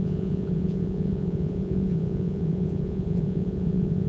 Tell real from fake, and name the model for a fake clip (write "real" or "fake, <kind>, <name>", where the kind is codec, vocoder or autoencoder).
fake, vocoder, Vocos